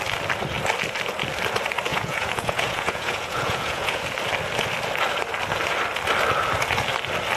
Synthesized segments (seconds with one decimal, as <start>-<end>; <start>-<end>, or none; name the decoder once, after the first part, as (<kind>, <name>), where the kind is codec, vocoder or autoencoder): 1.9-4.0 (vocoder, Vocos)